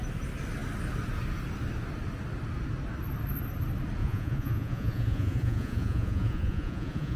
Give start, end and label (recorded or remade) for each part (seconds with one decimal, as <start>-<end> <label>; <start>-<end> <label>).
0.0-4.0 recorded; 4.0-7.2 remade